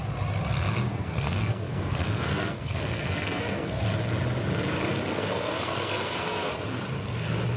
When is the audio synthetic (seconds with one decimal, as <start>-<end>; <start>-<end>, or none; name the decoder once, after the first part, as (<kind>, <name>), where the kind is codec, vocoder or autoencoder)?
0.9-3.8 (codec, SNAC); 5.1-6.5